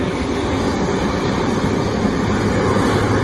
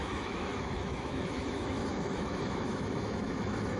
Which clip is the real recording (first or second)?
first